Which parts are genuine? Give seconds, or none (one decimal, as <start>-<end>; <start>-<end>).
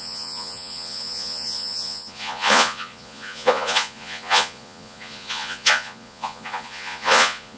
none